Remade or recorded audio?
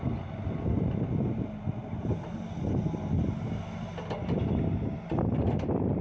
recorded